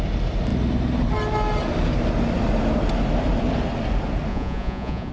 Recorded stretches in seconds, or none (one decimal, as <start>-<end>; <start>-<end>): 0.0-4.3